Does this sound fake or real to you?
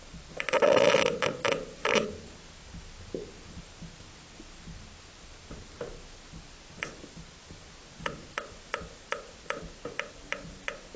real